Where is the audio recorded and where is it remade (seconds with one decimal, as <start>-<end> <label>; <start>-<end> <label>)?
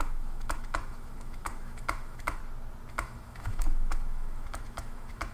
0.0-2.4 remade; 2.4-2.9 recorded; 2.9-5.3 remade